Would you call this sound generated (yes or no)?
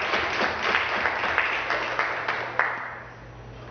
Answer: no